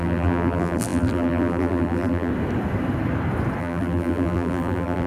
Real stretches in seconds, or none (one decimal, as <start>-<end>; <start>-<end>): 2.3-3.6